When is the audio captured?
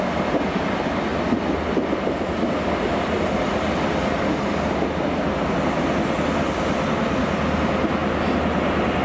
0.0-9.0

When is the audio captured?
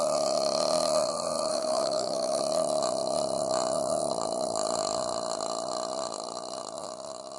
0.0-1.5; 2.4-7.4